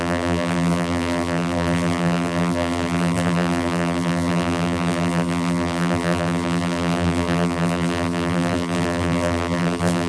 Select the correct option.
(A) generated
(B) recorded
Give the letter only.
A